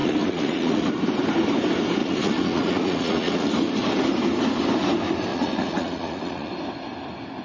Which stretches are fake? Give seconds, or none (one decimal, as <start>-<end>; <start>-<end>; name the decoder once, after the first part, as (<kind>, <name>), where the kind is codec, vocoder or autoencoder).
0.0-0.9 (vocoder, Vocos); 2.0-3.5; 5.3-6.5